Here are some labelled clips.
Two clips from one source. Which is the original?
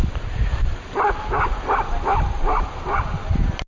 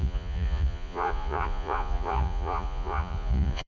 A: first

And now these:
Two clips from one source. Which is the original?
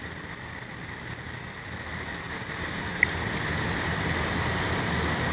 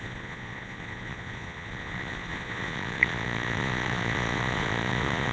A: first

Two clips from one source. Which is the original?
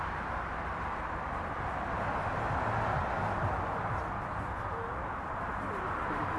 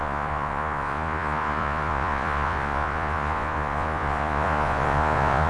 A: first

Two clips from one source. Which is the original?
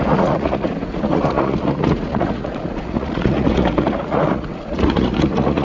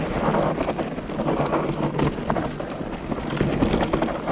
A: second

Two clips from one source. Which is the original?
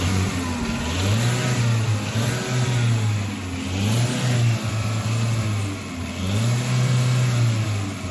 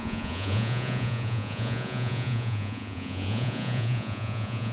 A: first